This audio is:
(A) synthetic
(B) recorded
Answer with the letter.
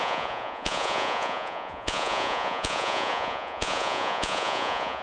A